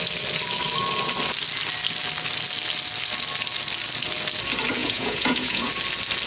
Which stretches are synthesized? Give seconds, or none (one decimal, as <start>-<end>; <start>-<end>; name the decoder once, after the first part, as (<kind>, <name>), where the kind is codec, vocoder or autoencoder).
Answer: 4.8-5.7 (vocoder, Vocos)